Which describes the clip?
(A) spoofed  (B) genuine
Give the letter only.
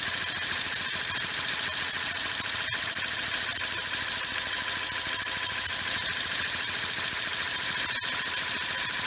B